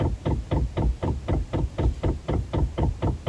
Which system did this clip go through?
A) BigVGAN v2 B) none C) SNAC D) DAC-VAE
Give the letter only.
A